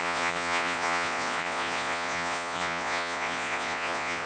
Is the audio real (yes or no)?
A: no